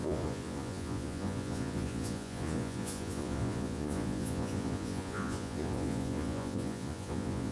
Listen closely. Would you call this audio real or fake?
fake